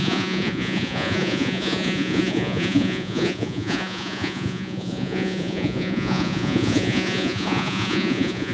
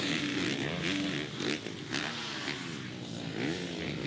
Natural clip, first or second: second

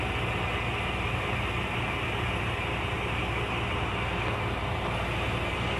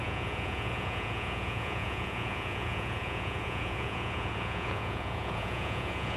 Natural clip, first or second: first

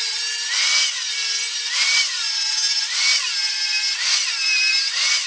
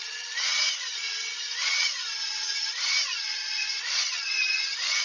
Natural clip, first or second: first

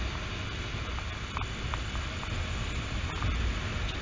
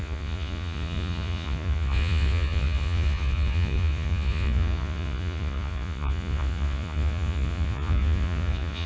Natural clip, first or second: first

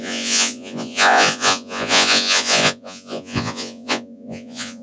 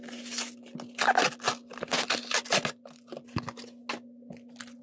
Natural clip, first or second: second